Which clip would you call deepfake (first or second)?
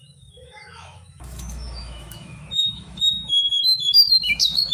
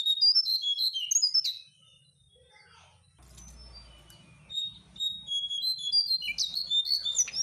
first